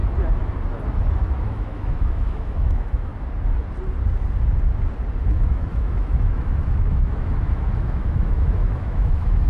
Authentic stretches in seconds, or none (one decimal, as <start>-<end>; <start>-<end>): 0.0-1.4; 3.1-5.2